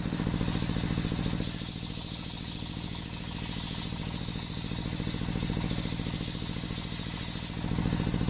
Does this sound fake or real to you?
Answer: real